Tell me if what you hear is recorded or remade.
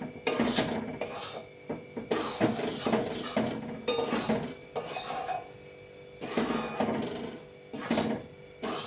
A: recorded